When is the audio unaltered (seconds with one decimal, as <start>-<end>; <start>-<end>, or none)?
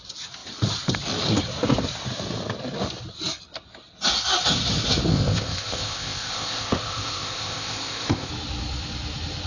0.0-5.1; 8.3-9.5